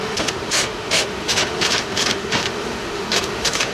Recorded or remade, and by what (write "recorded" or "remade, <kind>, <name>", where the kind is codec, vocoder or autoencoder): remade, autoencoder, DAC-VAE